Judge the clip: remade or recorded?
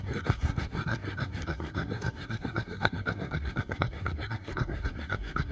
remade